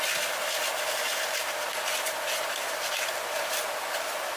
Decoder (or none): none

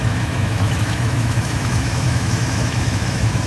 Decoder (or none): autoencoder, DAC-VAE